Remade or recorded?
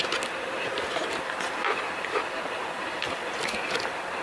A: recorded